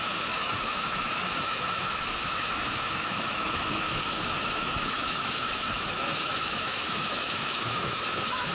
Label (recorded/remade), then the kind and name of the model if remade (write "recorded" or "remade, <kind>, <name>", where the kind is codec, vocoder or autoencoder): remade, autoencoder, DAC-VAE